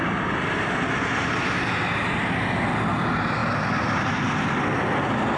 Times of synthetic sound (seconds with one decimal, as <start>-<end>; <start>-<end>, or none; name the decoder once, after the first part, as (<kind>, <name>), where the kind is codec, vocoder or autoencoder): none

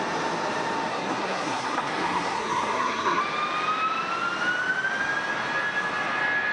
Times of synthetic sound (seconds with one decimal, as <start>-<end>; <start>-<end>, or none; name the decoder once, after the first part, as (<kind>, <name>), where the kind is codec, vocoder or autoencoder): 0.9-3.2 (codec, SNAC)

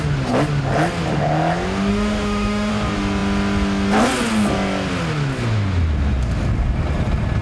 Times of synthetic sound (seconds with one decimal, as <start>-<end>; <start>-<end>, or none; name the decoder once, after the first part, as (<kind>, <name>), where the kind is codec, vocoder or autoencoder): 1.9-2.7 (autoencoder, DAC-VAE)

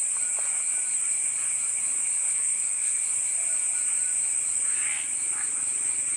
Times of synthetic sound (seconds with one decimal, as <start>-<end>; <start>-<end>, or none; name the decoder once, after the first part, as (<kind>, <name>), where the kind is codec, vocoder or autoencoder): 2.3-3.0 (codec, SNAC)